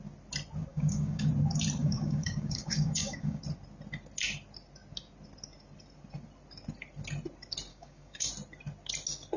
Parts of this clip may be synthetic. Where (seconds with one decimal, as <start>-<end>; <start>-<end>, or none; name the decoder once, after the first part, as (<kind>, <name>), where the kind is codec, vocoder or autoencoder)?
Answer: 0.7-1.3 (codec, DAC); 1.8-3.4; 7.7-8.3